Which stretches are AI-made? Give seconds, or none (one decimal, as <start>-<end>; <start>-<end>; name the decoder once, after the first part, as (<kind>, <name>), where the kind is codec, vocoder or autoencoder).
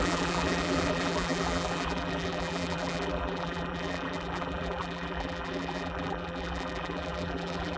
0.0-7.8 (vocoder, BigVGAN v2)